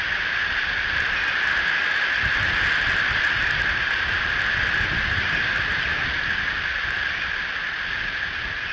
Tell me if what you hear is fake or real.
real